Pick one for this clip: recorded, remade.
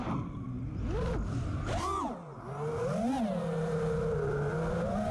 recorded